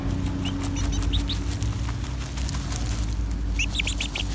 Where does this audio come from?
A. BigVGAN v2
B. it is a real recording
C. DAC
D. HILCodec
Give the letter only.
B